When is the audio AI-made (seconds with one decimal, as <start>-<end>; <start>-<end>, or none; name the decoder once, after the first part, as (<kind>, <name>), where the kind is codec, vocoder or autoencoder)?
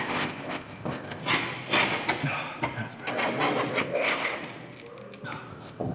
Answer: 0.0-1.2 (codec, ZipCodec); 3.8-4.3; 5.5-5.9